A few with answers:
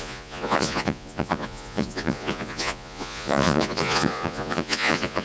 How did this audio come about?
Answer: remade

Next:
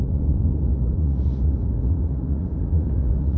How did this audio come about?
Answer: remade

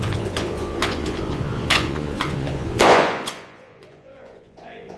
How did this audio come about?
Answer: remade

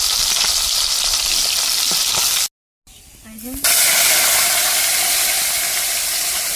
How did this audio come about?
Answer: recorded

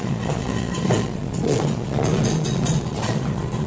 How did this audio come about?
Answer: remade